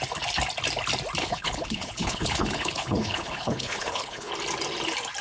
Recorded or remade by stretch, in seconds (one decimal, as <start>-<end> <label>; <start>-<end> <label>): 0.0-1.2 recorded; 1.2-4.3 remade; 4.3-5.2 recorded